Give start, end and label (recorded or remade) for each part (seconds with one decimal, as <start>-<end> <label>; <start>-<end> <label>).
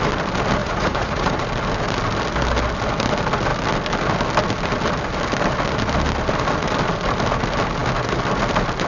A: 0.0-0.6 recorded; 0.6-1.4 remade; 1.4-8.9 recorded